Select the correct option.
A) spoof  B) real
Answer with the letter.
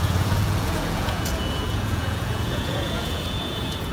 A